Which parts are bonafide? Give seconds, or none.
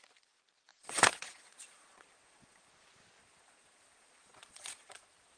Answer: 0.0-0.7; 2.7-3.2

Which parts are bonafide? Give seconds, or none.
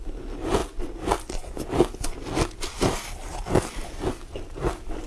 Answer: 0.0-5.1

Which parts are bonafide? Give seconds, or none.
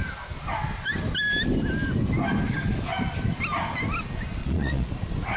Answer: 0.0-4.4; 4.9-5.4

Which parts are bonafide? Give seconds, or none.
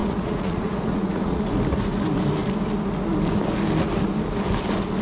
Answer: 1.4-5.0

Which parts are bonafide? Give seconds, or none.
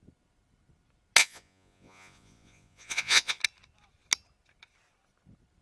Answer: 0.0-1.2; 3.4-5.6